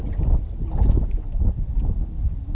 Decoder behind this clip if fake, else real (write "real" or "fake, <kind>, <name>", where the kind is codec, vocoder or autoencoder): real